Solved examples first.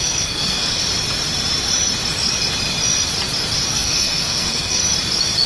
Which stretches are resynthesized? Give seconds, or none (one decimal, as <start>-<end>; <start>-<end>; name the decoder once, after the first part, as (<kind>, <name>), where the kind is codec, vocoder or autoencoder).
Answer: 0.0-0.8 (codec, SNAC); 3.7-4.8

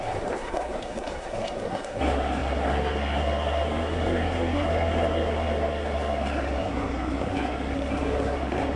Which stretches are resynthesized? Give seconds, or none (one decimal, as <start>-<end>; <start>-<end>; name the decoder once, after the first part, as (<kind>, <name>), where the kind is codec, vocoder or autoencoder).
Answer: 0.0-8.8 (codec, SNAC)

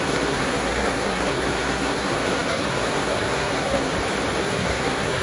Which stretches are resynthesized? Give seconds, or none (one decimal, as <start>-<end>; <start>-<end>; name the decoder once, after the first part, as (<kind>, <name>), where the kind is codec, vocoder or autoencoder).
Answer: 0.0-3.9 (codec, SNAC); 4.4-5.2